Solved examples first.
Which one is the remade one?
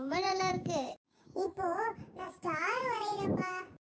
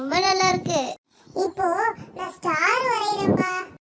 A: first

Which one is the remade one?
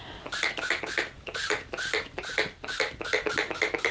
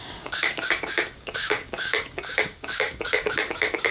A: second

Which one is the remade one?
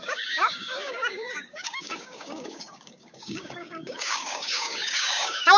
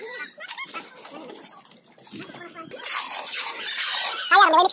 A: first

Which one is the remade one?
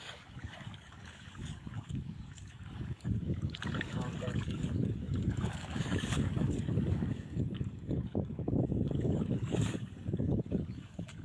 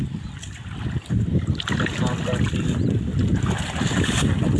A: first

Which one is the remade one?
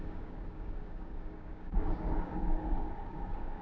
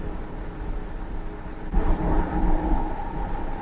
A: first